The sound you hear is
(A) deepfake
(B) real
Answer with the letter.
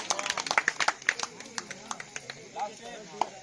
B